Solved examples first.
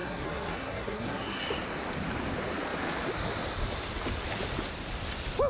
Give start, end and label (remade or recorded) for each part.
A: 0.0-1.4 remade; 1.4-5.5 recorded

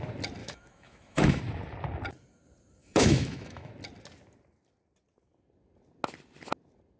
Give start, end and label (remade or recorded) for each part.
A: 0.0-0.4 recorded; 0.4-1.4 remade; 1.4-2.8 recorded; 2.8-3.7 remade; 3.7-7.0 recorded

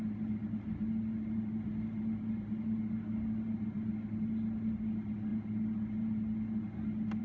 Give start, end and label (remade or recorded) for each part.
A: 0.0-7.2 recorded

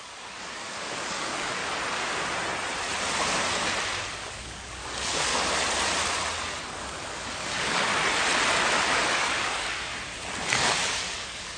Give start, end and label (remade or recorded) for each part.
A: 0.0-1.6 remade; 1.6-4.0 recorded; 4.0-5.3 remade; 5.3-6.6 recorded; 6.6-7.9 remade; 7.9-8.9 recorded; 8.9-9.9 remade; 9.9-10.4 recorded; 10.4-11.6 remade

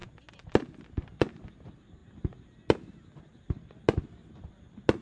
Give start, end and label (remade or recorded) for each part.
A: 0.0-5.0 recorded

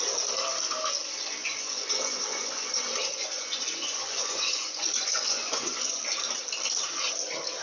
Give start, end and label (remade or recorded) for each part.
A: 0.0-1.4 recorded; 1.4-6.0 remade; 6.0-7.6 recorded

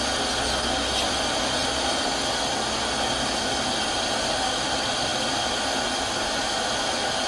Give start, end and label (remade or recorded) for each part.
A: 0.0-7.3 recorded

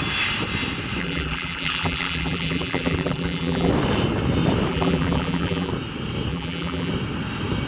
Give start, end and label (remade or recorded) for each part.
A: 0.0-1.0 recorded; 1.0-3.7 remade; 3.7-4.7 recorded; 4.7-5.7 remade; 5.7-6.3 recorded; 6.3-6.9 remade; 6.9-7.7 recorded